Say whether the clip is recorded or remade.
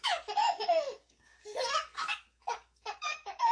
remade